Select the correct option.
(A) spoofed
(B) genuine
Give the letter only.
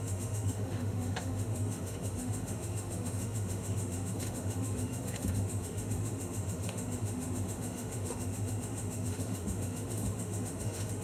A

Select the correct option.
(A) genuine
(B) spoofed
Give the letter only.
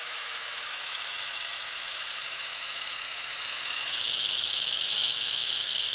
B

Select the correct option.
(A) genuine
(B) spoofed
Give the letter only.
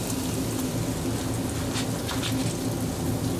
A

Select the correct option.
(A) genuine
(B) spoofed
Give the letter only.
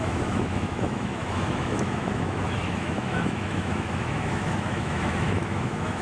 B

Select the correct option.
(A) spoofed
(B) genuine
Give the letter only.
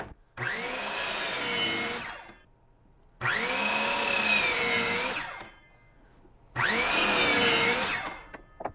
B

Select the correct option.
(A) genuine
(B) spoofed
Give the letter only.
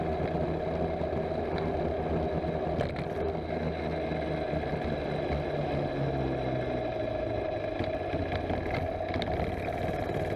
A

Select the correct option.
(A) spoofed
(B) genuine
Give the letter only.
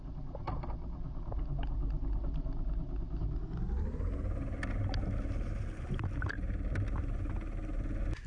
B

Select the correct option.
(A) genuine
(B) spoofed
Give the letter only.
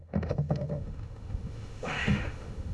B